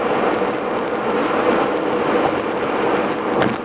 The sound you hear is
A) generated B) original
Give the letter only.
B